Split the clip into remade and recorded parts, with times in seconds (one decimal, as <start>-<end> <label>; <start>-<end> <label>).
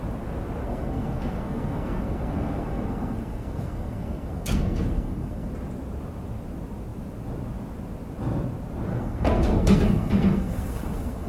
0.0-0.6 recorded; 0.6-5.5 remade; 5.5-8.9 recorded; 8.9-11.3 remade